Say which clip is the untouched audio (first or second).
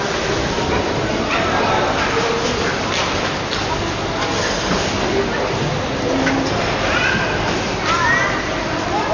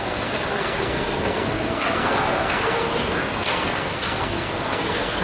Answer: first